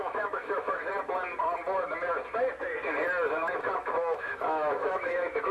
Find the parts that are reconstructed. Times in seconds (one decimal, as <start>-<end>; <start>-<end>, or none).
0.0-0.9; 3.3-5.5

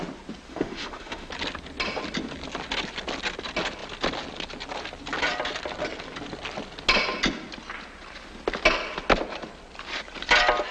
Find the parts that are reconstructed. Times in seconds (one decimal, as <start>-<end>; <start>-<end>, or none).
0.5-1.3

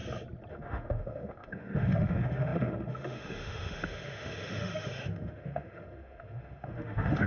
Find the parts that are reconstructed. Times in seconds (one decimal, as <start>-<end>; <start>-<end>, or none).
0.5-7.3

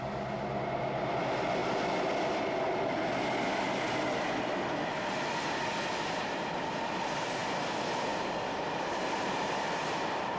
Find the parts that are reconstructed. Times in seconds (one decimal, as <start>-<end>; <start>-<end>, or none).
none